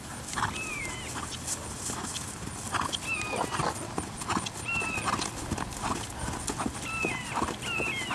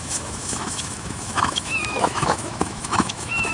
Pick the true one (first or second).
first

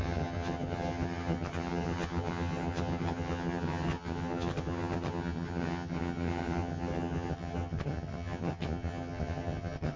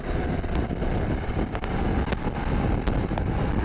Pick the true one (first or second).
second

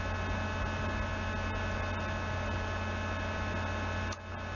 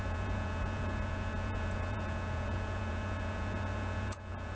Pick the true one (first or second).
first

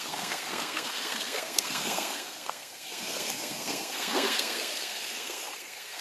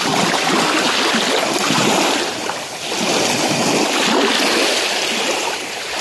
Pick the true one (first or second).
second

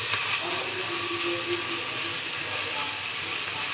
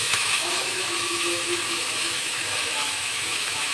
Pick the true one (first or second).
first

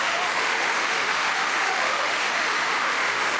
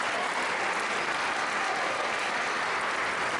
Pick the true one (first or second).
second